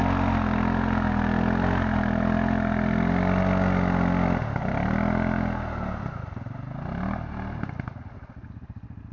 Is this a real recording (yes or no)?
yes